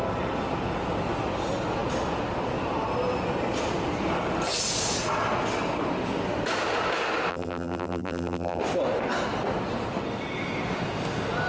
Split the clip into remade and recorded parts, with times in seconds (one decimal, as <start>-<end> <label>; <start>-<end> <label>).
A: 0.0-7.3 recorded; 7.3-8.6 remade; 8.6-11.5 recorded